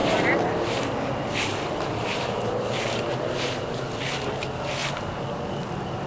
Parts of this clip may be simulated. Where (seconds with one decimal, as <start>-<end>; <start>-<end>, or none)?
0.0-3.7